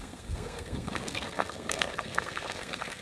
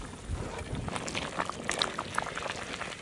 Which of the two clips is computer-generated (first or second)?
first